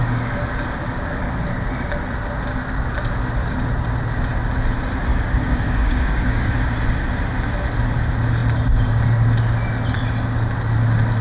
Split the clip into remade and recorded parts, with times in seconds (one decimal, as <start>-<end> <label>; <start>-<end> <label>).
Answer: 0.0-5.1 recorded; 5.1-6.5 remade; 6.5-11.2 recorded